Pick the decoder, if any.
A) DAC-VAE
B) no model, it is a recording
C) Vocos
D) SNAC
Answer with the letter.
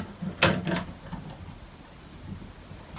B